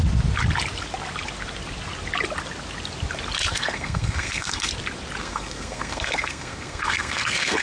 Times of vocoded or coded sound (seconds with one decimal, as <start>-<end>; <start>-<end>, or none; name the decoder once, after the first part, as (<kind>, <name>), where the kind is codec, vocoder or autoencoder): 3.5-4.7 (codec, SNAC); 5.2-7.6